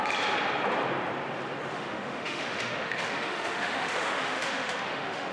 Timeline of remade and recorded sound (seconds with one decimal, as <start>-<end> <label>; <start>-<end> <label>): 0.0-1.7 recorded; 1.7-5.3 remade